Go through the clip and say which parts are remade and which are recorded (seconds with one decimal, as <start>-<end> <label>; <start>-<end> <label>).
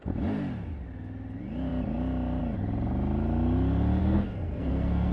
0.0-4.0 recorded; 4.0-5.1 remade